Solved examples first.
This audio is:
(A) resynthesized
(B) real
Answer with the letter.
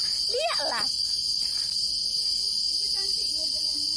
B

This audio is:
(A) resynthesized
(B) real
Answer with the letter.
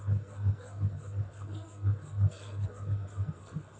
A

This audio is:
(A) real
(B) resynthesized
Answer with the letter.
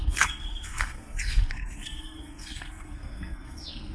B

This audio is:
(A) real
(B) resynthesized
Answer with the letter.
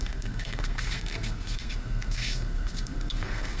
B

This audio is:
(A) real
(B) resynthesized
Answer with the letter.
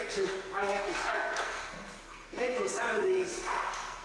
B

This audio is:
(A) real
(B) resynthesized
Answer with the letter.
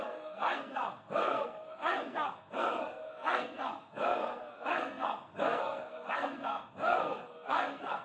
B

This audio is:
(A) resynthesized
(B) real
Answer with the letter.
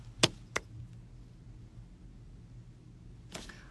B